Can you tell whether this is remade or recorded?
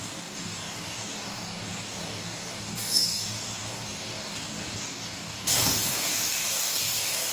remade